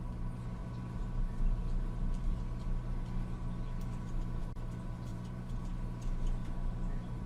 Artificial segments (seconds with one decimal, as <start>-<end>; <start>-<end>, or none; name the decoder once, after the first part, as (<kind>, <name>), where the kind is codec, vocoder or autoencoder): 5.1-5.6 (vocoder, BigVGAN v2); 6.4-7.3